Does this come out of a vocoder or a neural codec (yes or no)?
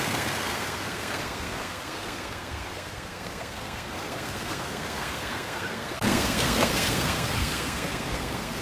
yes